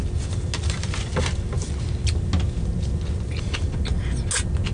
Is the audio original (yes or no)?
yes